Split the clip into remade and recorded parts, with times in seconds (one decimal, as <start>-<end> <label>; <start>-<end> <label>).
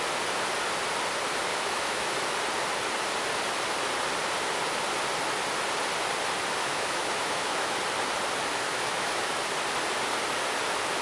0.0-1.5 recorded; 1.5-2.1 remade; 2.1-6.6 recorded; 6.6-7.8 remade; 7.8-8.7 recorded; 8.7-9.4 remade; 9.4-11.0 recorded